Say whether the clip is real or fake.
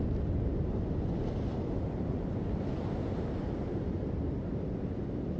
real